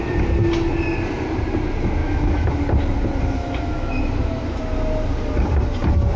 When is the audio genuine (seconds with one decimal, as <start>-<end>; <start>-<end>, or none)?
0.0-2.0; 2.6-3.4; 4.6-6.2